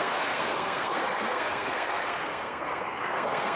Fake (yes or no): yes